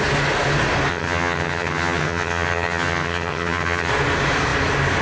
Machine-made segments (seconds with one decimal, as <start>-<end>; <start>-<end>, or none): 0.9-3.9

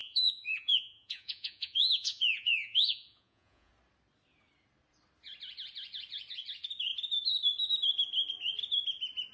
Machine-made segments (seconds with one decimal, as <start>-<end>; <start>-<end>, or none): 0.0-3.7

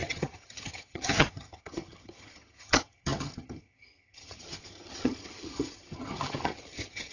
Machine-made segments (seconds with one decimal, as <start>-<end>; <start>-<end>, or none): 0.0-7.1

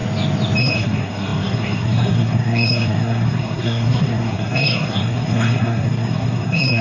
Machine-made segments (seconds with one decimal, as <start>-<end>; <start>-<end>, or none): 0.6-6.8

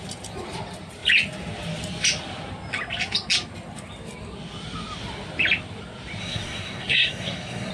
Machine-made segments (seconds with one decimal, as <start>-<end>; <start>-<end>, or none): 6.2-7.7